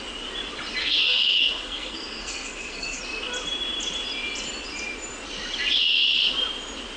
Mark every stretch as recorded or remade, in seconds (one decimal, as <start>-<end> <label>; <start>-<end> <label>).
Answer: 0.0-0.8 recorded; 0.8-3.0 remade; 3.0-7.0 recorded